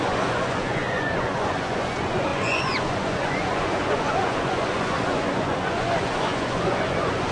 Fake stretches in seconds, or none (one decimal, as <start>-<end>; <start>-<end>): 0.0-7.3